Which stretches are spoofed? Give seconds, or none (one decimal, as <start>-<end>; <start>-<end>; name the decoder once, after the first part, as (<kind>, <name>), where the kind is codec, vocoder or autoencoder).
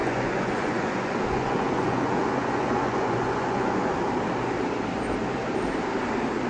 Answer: 0.0-3.9 (vocoder, Vocos)